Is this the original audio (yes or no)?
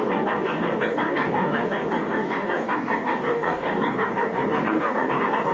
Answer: no